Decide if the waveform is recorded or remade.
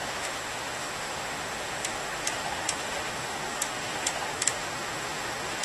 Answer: remade